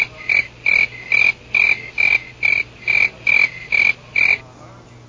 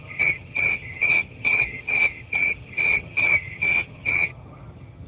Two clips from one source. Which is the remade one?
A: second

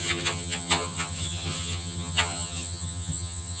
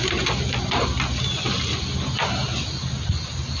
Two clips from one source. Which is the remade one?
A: first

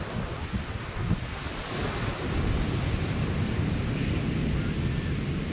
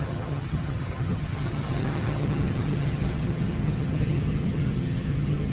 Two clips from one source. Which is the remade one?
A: second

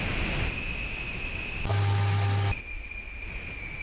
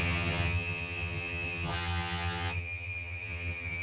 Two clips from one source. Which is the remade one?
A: second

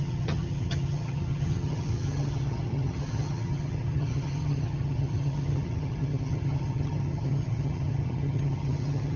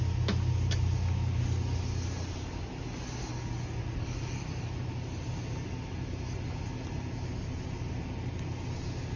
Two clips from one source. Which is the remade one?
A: first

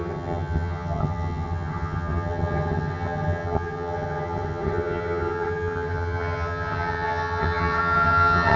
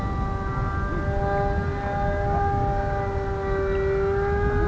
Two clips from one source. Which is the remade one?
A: first